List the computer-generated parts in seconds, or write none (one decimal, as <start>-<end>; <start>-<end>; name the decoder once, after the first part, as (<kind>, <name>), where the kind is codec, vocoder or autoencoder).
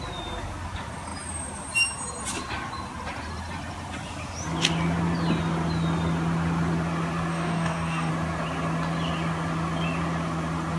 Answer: 7.3-8.1 (codec, DAC)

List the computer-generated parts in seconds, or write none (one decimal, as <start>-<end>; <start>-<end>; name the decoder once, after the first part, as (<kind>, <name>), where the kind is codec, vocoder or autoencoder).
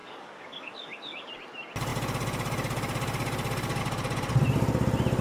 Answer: 0.0-1.3 (codec, DAC)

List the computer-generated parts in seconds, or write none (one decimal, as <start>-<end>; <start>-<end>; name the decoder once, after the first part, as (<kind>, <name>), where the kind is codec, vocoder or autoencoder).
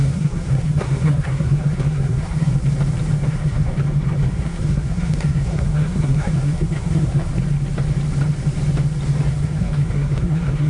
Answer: 0.0-2.5 (codec, SNAC); 3.3-3.7; 4.3-7.3; 9.3-10.7